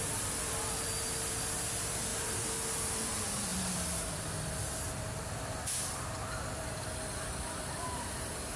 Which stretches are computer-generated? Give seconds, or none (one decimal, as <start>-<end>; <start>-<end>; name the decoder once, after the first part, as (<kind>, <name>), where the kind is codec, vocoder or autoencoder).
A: 0.0-8.6 (vocoder, BigVGAN v2)